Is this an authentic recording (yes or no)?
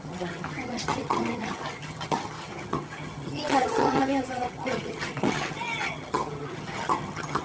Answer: no